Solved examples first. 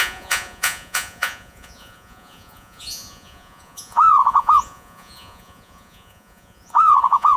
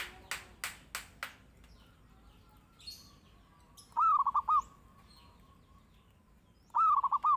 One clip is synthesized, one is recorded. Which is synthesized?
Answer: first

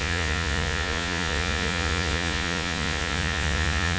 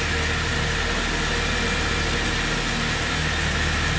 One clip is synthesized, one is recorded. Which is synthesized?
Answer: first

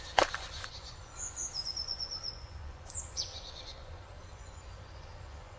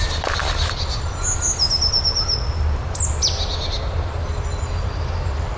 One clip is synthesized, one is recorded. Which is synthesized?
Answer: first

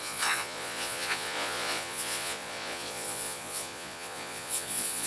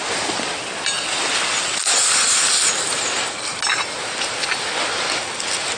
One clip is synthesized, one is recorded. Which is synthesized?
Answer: first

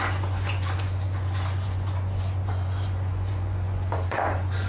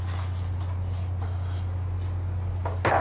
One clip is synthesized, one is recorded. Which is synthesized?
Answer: first